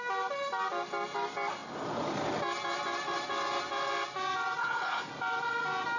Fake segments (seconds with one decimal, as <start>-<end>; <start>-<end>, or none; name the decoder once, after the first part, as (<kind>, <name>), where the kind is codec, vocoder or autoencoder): 4.6-5.1 (codec, HILCodec)